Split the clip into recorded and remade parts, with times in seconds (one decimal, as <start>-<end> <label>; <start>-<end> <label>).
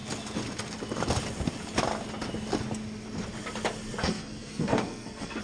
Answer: 0.0-4.0 recorded; 4.0-5.4 remade